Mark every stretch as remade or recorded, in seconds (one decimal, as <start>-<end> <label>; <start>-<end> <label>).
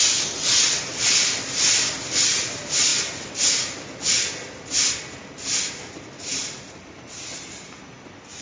0.0-8.4 recorded